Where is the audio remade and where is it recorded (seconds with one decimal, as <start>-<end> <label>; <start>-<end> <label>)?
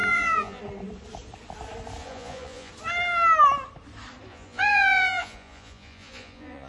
0.0-0.6 remade; 0.6-2.0 recorded; 2.0-2.7 remade; 2.7-4.3 recorded; 4.3-6.7 remade